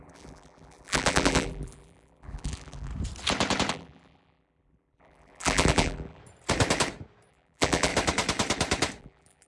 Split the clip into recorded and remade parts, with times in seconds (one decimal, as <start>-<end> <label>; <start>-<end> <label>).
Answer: 0.0-2.9 remade; 2.9-3.7 recorded; 3.7-6.2 remade; 6.2-7.3 recorded; 7.3-7.9 remade; 7.9-9.0 recorded; 9.0-9.5 remade

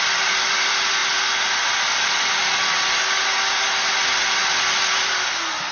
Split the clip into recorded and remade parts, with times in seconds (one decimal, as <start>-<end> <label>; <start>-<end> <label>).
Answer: 0.0-1.0 remade; 1.0-4.0 recorded; 4.0-4.4 remade; 4.4-5.7 recorded